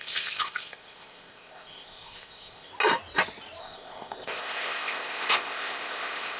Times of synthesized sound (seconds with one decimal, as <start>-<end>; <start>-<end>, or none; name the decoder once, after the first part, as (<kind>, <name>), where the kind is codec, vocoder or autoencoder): 0.0-2.7 (codec, ZipCodec); 3.6-6.4